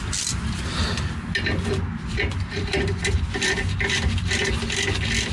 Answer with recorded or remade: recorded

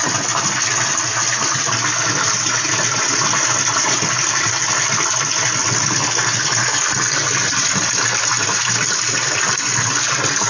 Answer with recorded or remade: recorded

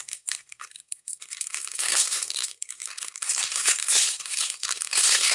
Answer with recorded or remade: remade